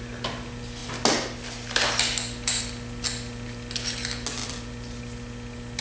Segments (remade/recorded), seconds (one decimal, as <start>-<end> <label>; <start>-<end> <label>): 0.0-4.4 recorded; 4.4-5.0 remade; 5.0-5.8 recorded